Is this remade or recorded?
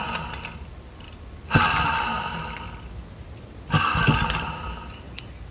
recorded